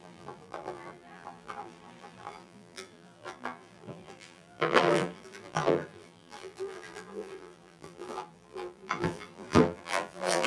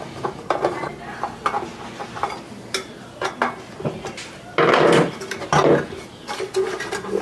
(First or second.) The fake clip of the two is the first